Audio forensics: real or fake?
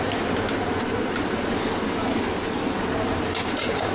real